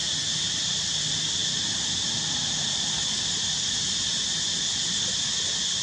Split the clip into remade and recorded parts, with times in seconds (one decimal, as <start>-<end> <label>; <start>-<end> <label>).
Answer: 0.0-5.8 recorded